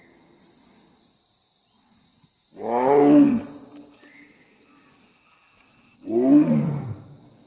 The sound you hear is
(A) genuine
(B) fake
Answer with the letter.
A